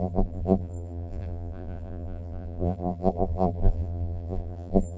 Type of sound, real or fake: fake